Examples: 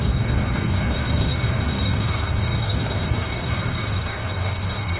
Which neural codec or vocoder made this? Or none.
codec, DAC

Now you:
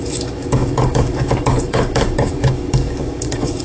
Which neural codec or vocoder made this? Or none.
codec, DAC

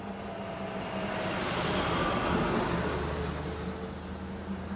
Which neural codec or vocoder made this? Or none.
none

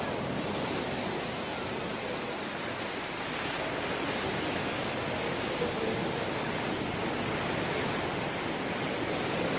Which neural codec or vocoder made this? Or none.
none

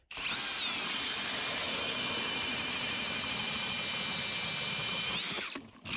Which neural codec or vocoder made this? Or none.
none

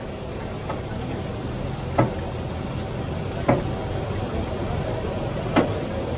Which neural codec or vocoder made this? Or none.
none